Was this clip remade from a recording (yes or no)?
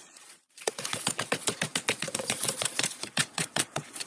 yes